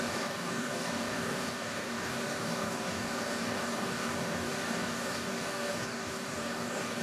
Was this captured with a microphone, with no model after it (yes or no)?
no